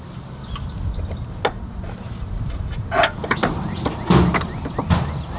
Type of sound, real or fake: real